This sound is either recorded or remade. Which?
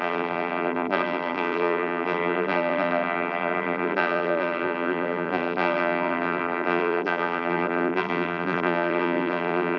remade